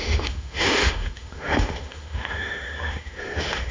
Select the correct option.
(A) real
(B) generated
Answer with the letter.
B